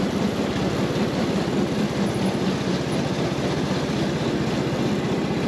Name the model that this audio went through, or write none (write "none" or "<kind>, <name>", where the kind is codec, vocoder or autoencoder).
none